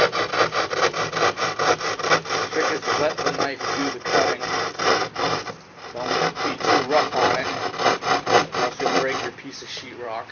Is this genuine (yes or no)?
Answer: no